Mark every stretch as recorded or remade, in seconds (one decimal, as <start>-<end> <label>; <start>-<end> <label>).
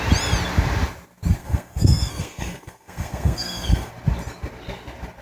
0.0-1.4 recorded; 1.4-3.9 remade; 3.9-5.2 recorded